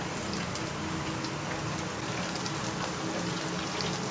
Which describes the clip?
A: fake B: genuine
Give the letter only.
B